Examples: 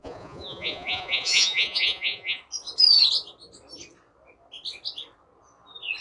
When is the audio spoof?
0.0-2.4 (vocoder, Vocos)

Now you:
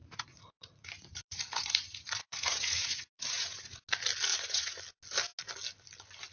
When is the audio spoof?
0.0-3.8 (vocoder, Vocos); 4.3-4.8

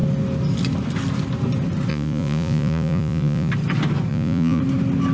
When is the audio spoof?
1.9-3.5 (vocoder, Vocos); 4.1-4.6

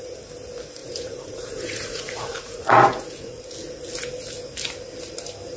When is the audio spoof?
0.8-3.4 (vocoder, Vocos)

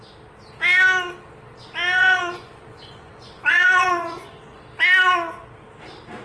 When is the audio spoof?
2.0-4.6 (vocoder, Vocos)

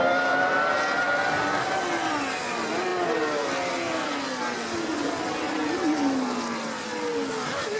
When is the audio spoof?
none